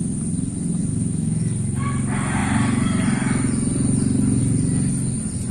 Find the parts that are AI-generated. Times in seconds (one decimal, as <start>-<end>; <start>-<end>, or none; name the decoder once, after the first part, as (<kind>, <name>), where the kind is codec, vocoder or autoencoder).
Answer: 0.9-1.4 (autoencoder, DAC-VAE)